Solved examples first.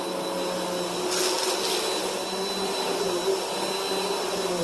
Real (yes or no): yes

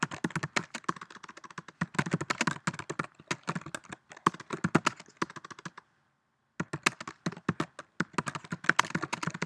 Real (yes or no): yes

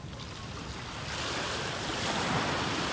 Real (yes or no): yes